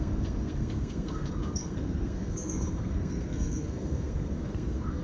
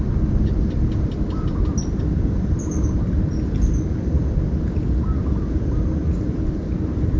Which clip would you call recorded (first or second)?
second